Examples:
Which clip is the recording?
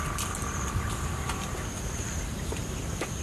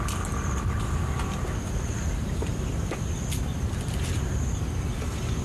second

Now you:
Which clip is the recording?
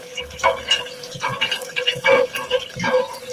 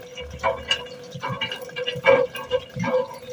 second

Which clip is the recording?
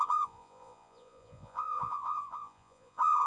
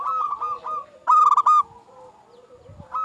second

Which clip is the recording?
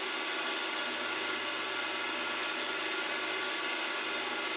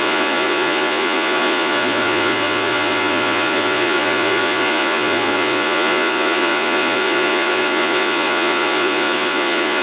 first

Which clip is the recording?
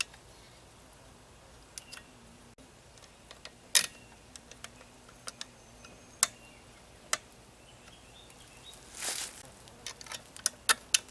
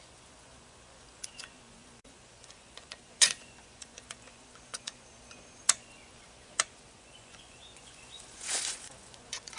first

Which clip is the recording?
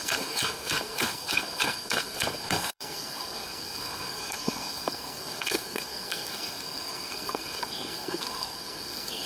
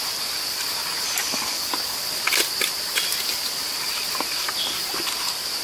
second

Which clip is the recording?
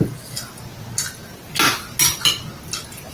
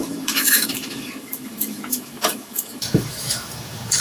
first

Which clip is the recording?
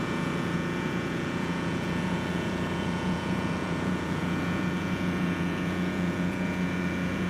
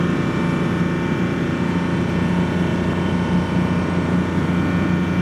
second